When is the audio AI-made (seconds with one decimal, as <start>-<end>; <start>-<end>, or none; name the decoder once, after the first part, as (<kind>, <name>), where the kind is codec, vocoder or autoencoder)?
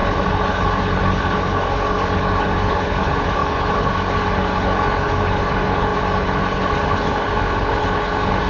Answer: 0.0-8.5 (codec, HILCodec)